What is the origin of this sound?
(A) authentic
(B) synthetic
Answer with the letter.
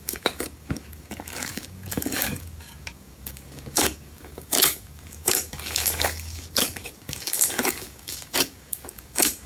B